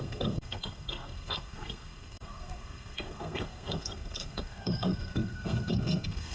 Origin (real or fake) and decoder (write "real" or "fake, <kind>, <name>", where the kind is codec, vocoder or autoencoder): fake, codec, SNAC